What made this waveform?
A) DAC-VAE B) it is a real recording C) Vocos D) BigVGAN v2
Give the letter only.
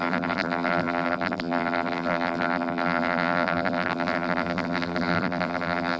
D